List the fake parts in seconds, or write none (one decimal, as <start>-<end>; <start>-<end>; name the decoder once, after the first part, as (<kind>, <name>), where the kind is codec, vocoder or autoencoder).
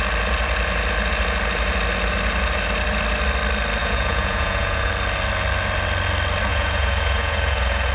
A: 3.8-4.9 (vocoder, Vocos); 6.5-7.9